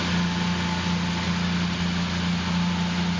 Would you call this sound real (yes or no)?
yes